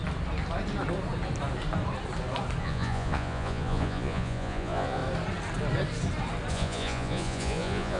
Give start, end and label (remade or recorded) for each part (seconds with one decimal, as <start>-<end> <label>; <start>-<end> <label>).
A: 0.0-2.6 recorded; 2.6-5.0 remade; 5.0-6.5 recorded; 6.5-8.0 remade